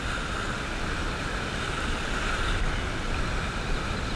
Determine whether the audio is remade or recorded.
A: recorded